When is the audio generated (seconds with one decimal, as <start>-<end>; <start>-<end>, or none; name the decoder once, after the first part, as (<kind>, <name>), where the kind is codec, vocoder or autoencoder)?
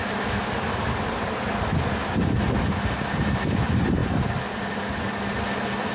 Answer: none